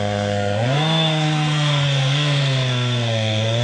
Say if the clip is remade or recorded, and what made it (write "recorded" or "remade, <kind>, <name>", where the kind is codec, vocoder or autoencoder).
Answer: remade, codec, SNAC